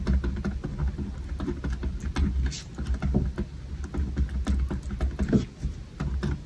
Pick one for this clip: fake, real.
real